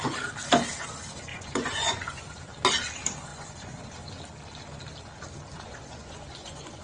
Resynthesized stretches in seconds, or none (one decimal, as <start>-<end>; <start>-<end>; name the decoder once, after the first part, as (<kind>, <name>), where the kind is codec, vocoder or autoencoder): 1.3-2.5 (vocoder, Vocos); 3.3-4.2; 5.5-6.8